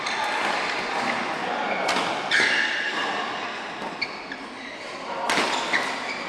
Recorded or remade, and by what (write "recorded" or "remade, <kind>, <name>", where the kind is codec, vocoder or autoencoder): recorded